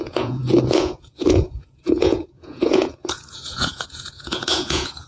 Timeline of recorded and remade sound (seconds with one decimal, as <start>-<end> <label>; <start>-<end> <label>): 0.0-5.1 remade